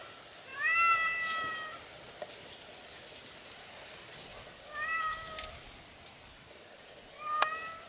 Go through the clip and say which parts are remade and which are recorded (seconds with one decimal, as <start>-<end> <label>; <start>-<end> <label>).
0.0-7.9 recorded